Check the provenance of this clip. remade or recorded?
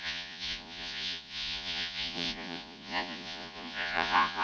remade